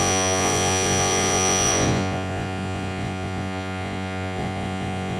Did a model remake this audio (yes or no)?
yes